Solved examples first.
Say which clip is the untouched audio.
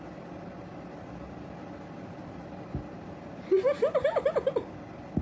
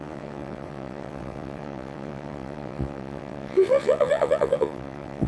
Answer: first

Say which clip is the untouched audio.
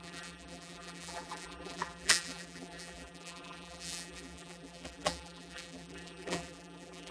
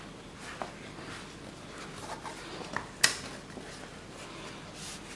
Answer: second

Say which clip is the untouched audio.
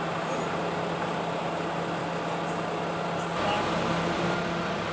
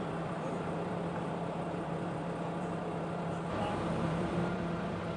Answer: first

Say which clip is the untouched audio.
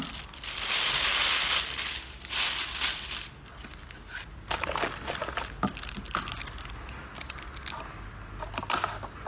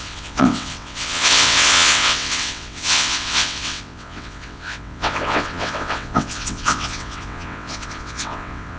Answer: first